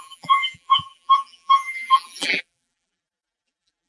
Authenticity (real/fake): fake